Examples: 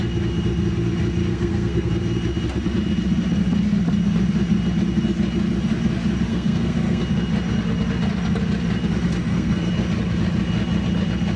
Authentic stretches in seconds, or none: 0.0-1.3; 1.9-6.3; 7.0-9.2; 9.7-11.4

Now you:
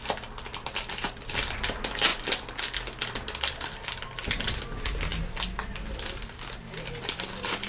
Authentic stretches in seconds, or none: 0.0-7.7

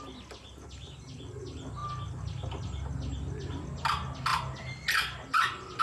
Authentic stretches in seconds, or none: 0.0-5.8